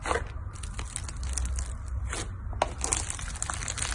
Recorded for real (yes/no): yes